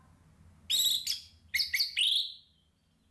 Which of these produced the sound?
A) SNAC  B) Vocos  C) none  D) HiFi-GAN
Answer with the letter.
C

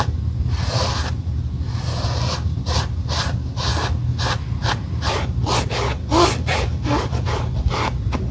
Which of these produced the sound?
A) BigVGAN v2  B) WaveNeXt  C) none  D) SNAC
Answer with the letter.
C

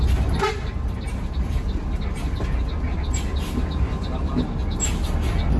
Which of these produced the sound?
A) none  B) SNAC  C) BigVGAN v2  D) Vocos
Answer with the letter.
A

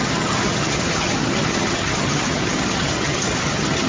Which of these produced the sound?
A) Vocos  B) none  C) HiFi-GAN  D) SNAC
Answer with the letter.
C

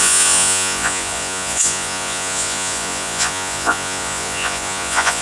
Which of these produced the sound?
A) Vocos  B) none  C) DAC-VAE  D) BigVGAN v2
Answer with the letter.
A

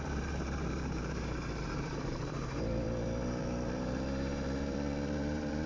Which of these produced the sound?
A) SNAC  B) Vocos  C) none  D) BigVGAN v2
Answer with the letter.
D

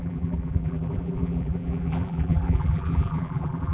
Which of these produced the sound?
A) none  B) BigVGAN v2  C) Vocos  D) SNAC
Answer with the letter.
B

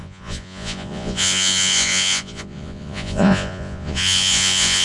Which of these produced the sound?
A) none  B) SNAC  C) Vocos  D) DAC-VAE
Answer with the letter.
C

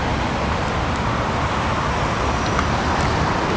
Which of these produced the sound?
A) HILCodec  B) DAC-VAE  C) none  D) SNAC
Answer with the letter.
C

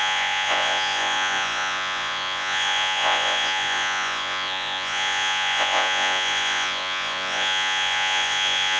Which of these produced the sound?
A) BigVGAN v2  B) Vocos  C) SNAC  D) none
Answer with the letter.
B